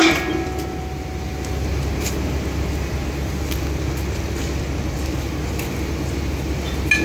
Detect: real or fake real